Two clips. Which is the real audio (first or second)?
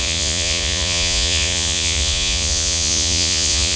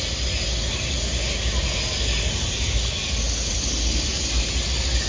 second